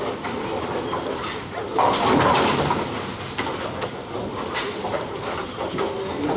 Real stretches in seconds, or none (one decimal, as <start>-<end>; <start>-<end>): 0.0-6.4